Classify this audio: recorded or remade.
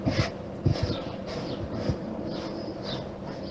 recorded